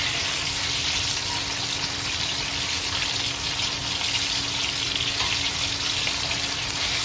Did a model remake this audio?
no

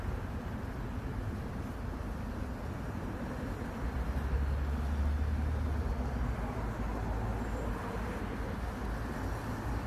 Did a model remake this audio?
no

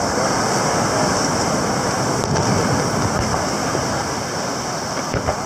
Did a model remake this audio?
no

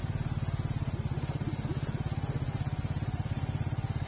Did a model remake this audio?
no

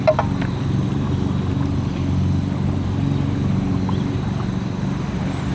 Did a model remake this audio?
no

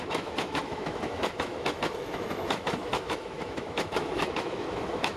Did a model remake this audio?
yes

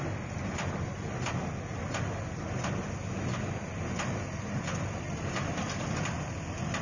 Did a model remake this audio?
no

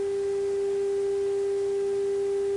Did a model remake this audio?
no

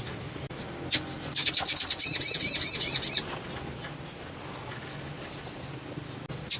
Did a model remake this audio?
no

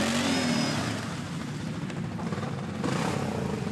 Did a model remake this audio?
no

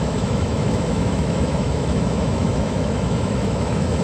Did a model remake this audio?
yes